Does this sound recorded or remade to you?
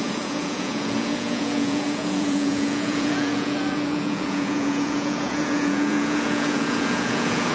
remade